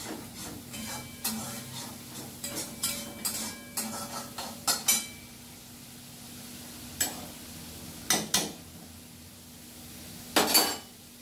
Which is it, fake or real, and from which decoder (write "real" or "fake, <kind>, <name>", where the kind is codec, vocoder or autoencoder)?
real